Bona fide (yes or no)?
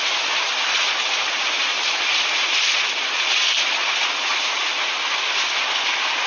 yes